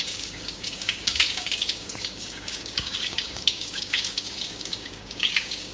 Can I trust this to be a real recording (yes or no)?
no